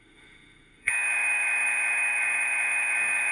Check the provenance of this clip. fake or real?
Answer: fake